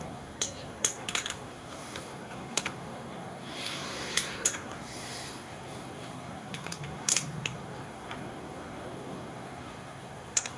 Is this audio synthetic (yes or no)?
yes